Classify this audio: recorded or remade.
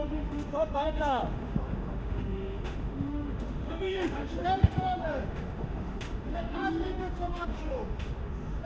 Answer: remade